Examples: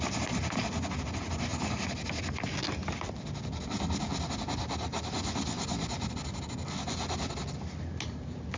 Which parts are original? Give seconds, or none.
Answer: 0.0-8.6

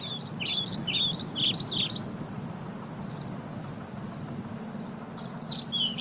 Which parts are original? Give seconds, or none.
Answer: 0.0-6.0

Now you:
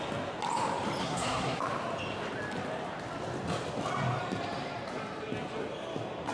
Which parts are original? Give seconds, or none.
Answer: 0.0-1.0; 1.6-6.3